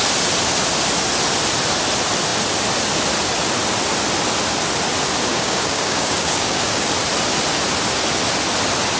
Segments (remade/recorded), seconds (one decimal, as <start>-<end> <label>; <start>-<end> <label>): 0.0-5.3 recorded; 5.3-6.9 remade; 6.9-9.0 recorded